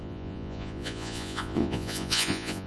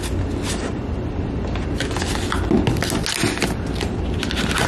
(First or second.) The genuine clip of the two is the second